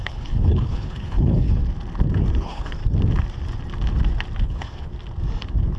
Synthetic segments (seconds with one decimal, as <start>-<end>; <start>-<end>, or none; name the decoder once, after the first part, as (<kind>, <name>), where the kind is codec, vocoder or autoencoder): 0.0-1.6 (codec, HILCodec); 2.4-2.8; 4.4-4.9